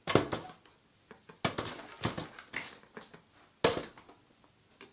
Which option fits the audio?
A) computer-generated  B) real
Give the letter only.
B